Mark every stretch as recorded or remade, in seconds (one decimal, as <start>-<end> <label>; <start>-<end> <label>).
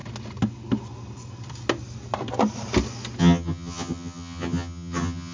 0.0-3.2 recorded; 3.2-5.3 remade